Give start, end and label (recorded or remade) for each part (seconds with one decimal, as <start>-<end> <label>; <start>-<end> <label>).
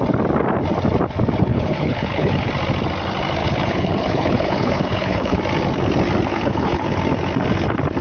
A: 0.0-1.5 recorded; 1.5-2.5 remade; 2.5-3.4 recorded; 3.4-5.4 remade; 5.4-6.3 recorded; 6.3-7.0 remade; 7.0-8.0 recorded